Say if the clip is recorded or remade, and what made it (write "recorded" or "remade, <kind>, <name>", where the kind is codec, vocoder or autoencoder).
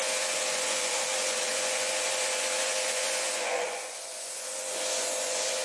remade, vocoder, Vocos